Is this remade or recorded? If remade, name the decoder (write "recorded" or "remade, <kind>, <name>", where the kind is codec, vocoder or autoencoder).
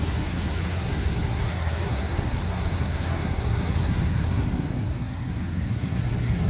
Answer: remade, codec, SNAC